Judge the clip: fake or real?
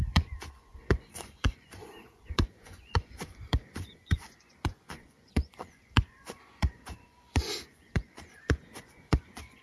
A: fake